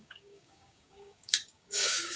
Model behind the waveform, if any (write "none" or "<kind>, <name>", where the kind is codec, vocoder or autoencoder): codec, DAC